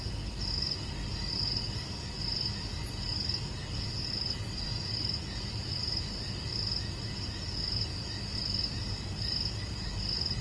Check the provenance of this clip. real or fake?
real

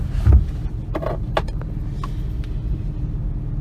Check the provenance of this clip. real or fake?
real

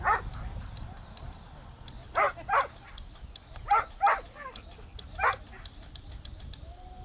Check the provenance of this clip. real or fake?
real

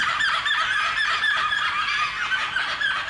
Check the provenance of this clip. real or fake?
real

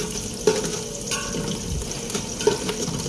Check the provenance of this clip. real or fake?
real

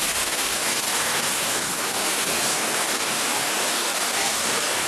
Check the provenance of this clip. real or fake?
fake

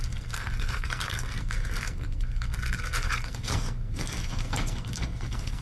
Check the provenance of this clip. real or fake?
fake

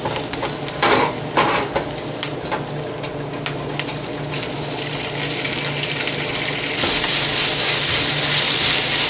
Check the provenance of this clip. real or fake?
real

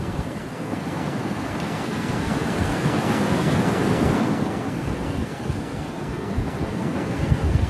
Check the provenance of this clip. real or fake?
fake